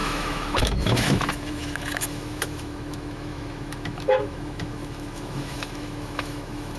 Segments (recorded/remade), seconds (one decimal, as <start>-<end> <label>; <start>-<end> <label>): 0.0-6.8 remade